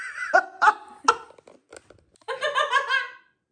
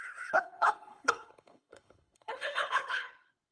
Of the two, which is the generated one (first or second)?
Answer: second